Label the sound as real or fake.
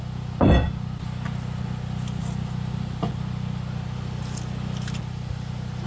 real